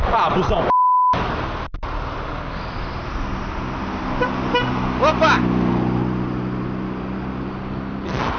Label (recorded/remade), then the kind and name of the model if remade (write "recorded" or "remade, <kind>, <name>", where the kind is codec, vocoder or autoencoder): recorded